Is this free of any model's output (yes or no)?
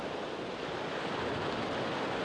yes